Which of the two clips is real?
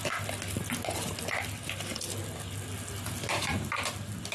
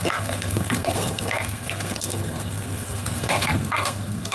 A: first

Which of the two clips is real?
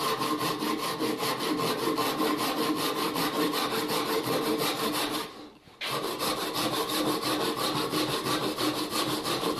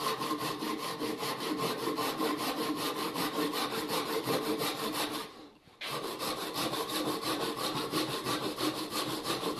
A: first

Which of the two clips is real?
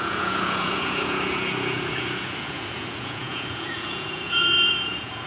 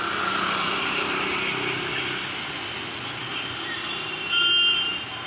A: second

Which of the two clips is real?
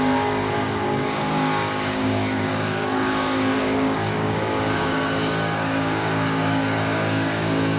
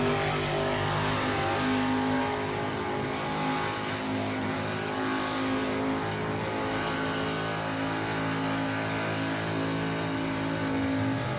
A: second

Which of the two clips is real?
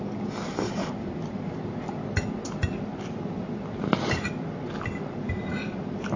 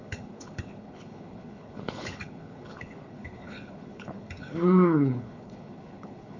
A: first